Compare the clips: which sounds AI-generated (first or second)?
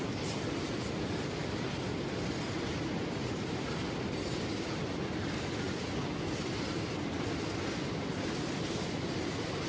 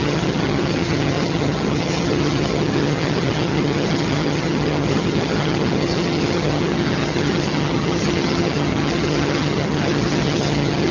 second